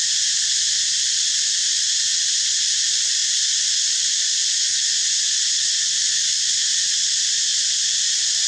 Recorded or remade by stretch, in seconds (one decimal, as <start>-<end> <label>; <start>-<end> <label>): 0.0-4.7 remade; 4.7-5.5 recorded; 5.5-7.5 remade; 7.5-8.5 recorded